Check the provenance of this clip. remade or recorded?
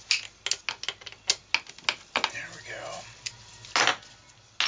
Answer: recorded